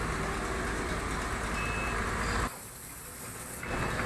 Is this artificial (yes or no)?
no